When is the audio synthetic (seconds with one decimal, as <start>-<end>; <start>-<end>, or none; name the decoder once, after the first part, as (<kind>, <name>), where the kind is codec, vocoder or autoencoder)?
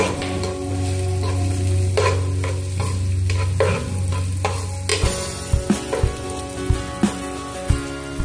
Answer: none